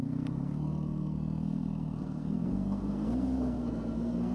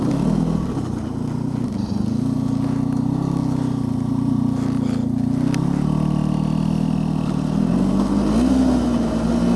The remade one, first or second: first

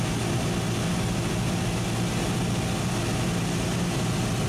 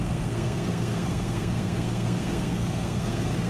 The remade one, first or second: second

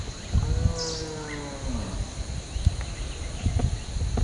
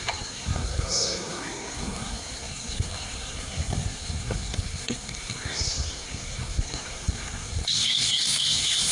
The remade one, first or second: second